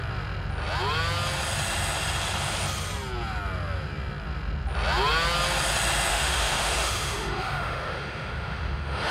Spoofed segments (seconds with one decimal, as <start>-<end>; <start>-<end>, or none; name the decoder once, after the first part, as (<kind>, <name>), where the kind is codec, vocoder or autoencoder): 6.1-9.1 (autoencoder, DAC-VAE)

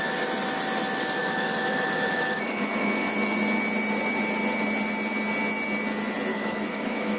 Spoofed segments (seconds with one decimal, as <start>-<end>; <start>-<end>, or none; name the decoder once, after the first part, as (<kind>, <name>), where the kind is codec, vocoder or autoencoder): 1.2-3.1 (autoencoder, DAC-VAE); 6.3-7.2

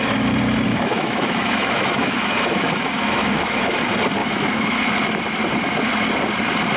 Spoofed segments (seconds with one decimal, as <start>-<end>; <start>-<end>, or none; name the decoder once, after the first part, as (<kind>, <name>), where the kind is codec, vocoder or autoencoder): 0.7-3.8 (autoencoder, DAC-VAE); 4.2-4.9

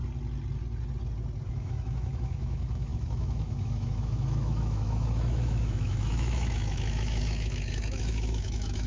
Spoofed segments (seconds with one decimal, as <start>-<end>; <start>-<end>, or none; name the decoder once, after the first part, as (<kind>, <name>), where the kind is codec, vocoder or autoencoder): 1.5-8.9 (autoencoder, DAC-VAE)

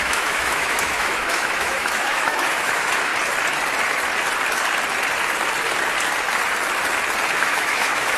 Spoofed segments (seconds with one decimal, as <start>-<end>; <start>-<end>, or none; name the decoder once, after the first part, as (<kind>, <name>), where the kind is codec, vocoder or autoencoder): 0.0-3.1 (autoencoder, DAC-VAE); 7.4-8.2

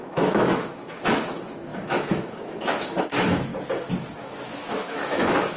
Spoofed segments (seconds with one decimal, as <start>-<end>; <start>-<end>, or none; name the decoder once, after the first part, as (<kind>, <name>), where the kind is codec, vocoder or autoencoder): 0.0-3.5 (autoencoder, DAC-VAE); 4.1-5.6

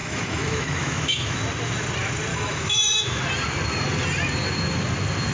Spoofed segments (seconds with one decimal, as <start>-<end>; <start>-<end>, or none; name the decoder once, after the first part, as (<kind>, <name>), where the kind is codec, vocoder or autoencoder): 0.0-1.4 (autoencoder, DAC-VAE); 2.3-3.2